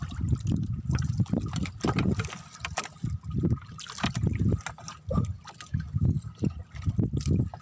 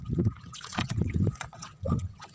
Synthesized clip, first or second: second